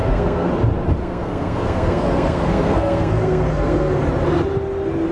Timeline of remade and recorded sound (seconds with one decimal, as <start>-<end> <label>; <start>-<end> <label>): 0.0-0.5 remade; 0.5-1.0 recorded; 1.0-4.0 remade; 4.0-5.1 recorded